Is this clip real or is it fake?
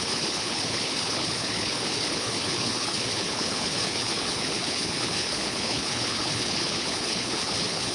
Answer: fake